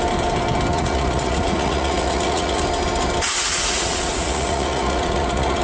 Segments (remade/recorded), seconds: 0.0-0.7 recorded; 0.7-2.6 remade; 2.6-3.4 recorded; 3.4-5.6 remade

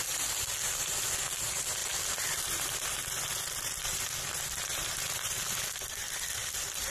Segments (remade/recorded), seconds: 0.0-1.8 recorded; 1.8-2.7 remade; 2.7-6.9 recorded

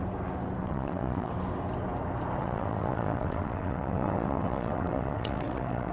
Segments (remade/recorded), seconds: 0.0-0.6 recorded; 0.6-1.3 remade; 1.3-2.4 recorded; 2.4-5.9 remade

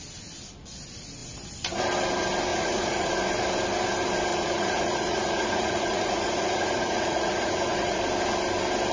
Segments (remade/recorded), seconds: 0.0-2.5 recorded; 2.5-3.1 remade; 3.1-4.3 recorded; 4.3-8.0 remade; 8.0-8.9 recorded

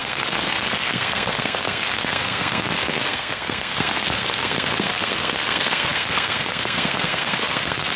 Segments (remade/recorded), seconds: 0.0-8.0 remade